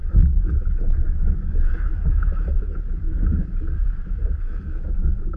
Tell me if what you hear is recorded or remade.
remade